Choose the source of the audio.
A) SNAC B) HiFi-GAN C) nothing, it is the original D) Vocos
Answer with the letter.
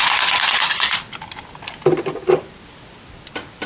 C